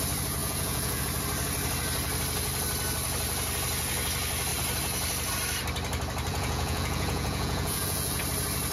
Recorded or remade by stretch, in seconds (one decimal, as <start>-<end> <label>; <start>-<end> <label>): 0.0-0.4 recorded; 0.4-1.0 remade; 1.0-6.3 recorded; 6.3-8.2 remade; 8.2-8.7 recorded